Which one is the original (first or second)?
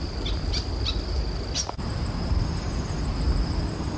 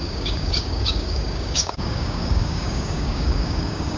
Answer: first